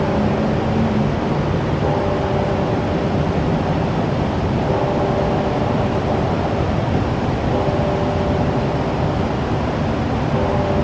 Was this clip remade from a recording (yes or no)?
no